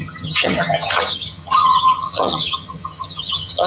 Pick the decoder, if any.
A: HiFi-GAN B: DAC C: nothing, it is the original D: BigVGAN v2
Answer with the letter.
A